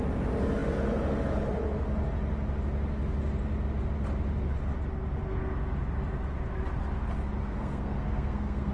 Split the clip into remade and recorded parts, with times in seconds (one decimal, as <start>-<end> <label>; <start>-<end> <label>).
0.0-7.4 recorded; 7.4-8.7 remade